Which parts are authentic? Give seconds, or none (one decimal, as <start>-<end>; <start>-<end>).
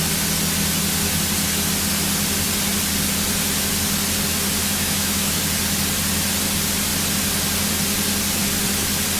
0.0-4.6; 5.4-9.2